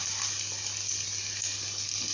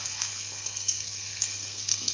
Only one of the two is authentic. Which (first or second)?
first